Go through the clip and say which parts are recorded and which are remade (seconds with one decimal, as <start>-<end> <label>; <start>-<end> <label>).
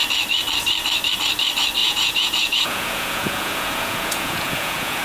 0.0-1.8 recorded; 1.8-5.0 remade